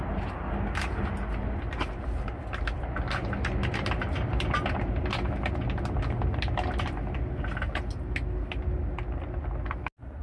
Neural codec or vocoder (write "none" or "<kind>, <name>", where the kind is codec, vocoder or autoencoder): none